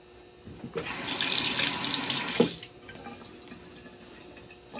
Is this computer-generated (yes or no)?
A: no